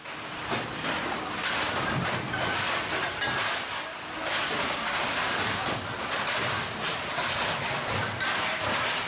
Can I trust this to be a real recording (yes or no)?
no